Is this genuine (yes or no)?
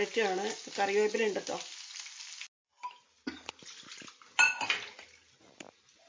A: yes